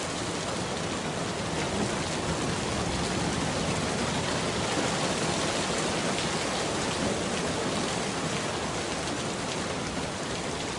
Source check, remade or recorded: recorded